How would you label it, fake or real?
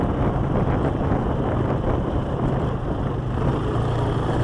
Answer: real